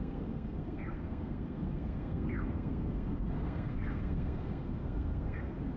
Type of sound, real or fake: fake